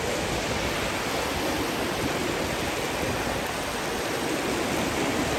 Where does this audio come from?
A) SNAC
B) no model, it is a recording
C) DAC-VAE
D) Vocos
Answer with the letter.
B